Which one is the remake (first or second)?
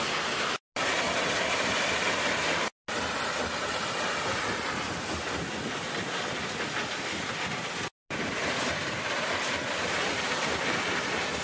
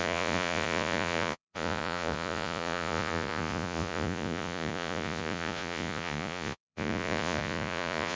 second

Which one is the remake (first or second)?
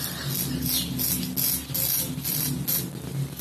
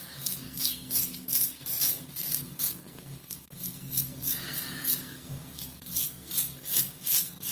second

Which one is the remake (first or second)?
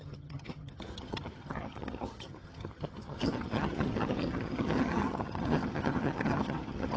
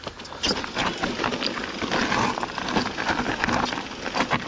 first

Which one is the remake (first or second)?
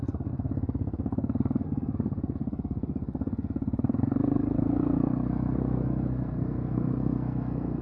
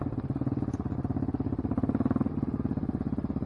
first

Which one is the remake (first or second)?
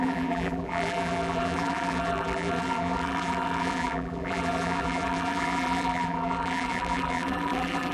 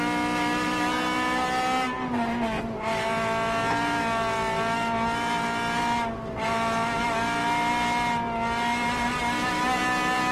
first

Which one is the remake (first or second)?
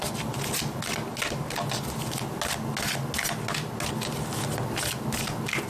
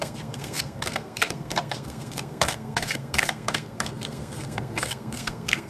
second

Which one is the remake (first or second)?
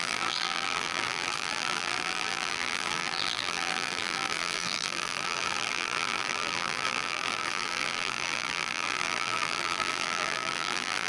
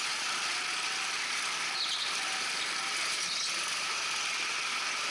first